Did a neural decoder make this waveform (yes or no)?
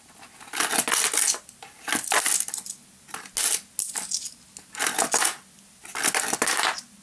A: no